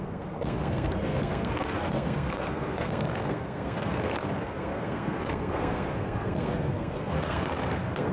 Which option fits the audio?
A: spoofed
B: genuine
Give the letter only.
A